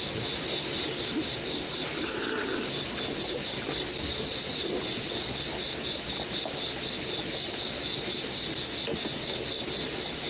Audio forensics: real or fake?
real